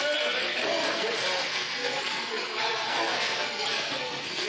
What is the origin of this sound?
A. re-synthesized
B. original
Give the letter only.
A